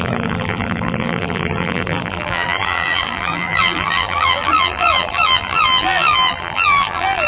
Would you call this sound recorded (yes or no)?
no